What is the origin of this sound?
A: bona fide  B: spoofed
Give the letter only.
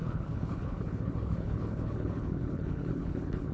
B